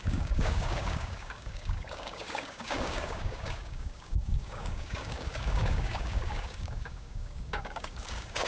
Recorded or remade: remade